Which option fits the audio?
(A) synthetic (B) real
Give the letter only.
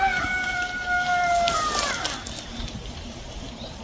B